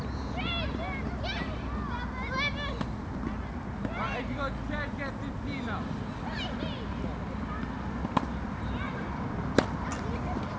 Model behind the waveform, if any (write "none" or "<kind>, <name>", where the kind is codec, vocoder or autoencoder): none